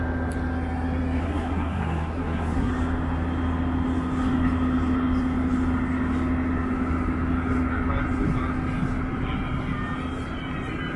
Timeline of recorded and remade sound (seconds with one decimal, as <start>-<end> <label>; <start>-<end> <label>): 0.0-1.2 recorded; 1.2-2.7 remade; 2.7-11.0 recorded